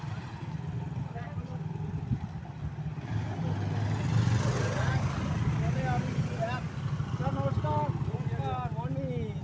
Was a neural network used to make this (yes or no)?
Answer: no